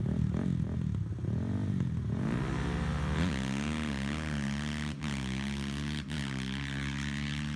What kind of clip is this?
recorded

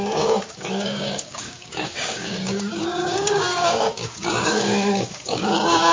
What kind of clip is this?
remade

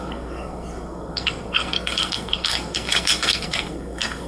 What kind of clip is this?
remade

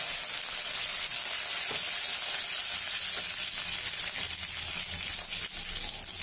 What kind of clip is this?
recorded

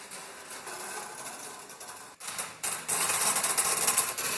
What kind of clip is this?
recorded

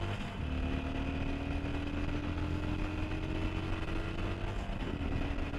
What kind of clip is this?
recorded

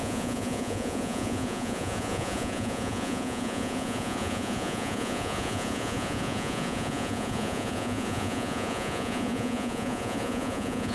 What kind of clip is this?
remade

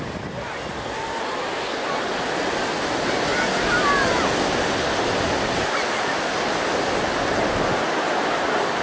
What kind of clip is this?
recorded